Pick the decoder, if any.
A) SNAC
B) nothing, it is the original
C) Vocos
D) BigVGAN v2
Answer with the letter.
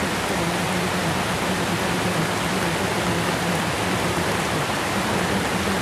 B